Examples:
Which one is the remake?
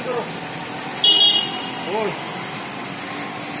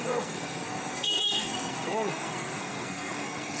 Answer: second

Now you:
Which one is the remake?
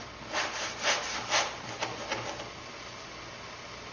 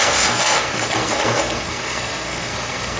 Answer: second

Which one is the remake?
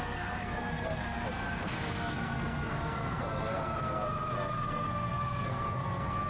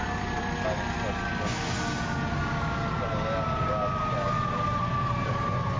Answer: first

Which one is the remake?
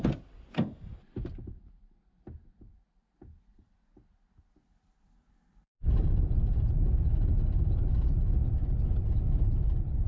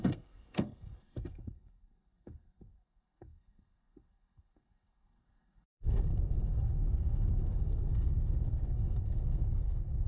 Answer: second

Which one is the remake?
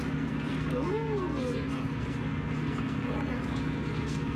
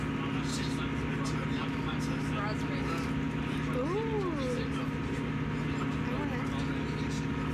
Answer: first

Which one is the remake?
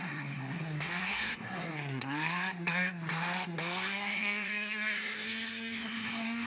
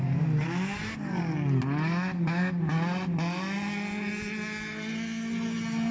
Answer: first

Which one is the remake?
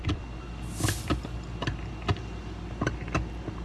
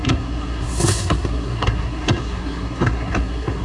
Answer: second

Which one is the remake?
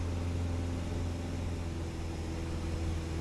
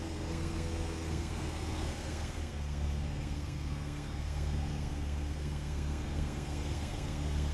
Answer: second